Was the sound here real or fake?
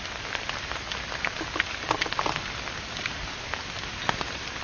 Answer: real